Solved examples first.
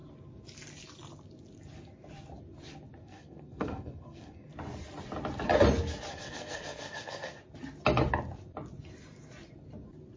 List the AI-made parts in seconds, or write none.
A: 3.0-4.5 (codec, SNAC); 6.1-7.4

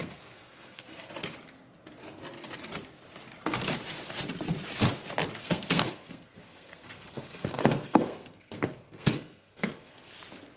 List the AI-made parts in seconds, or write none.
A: 0.0-1.1 (codec, SNAC); 5.4-10.2

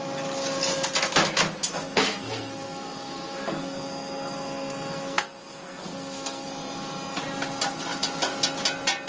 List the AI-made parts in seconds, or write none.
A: 1.7-6.5 (codec, SNAC)

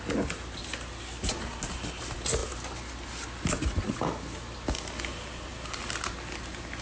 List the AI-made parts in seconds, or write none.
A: none